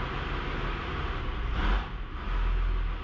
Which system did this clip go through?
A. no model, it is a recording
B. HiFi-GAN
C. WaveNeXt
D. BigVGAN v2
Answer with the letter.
A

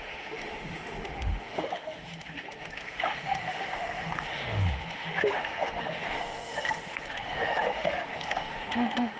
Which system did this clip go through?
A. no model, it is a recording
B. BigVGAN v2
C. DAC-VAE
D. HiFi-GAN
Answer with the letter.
C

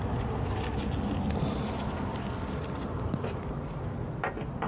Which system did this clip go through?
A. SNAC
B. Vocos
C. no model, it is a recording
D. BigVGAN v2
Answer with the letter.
C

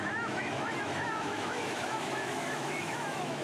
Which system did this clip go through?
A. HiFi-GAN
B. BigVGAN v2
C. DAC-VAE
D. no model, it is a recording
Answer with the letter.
C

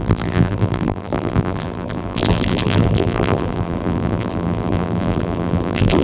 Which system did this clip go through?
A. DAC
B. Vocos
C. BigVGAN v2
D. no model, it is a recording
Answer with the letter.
C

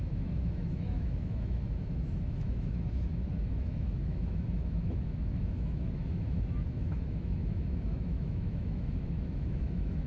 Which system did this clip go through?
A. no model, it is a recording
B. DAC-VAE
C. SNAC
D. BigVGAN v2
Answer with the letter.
B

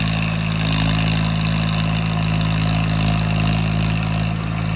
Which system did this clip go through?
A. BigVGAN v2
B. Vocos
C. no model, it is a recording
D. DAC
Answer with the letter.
C